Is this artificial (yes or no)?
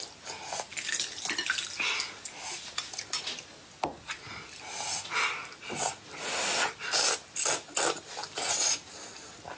no